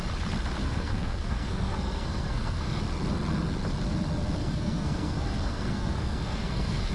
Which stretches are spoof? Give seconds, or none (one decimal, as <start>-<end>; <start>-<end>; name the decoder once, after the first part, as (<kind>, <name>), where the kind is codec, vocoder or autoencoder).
0.6-2.8 (codec, SNAC); 4.4-6.9